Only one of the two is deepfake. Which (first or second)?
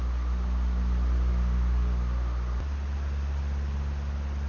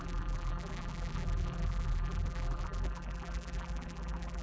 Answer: second